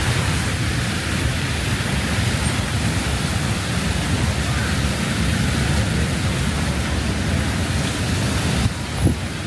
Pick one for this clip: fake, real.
real